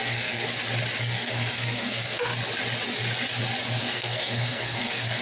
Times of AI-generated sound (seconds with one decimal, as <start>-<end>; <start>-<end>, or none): 0.0-0.5; 1.0-2.3; 3.8-5.2